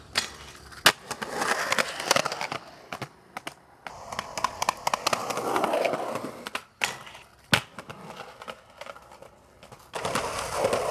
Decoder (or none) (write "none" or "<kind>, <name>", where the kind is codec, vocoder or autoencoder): none